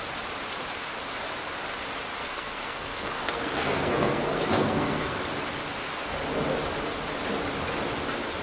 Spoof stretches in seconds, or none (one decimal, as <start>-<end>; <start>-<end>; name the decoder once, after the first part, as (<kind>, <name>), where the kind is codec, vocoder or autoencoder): 2.2-5.2 (codec, SNAC)